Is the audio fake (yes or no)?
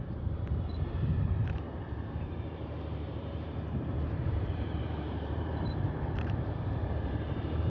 yes